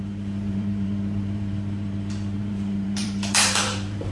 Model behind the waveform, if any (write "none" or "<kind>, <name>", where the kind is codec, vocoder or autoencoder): vocoder, BigVGAN v2